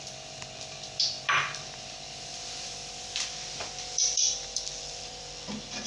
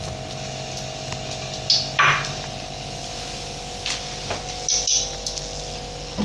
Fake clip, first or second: first